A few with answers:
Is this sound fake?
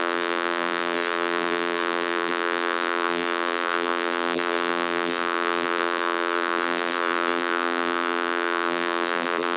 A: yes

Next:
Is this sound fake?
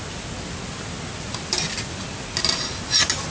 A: no